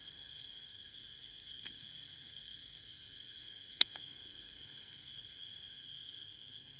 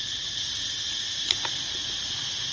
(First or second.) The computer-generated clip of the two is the first